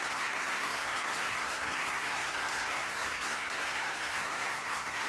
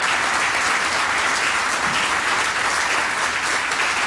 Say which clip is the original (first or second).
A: second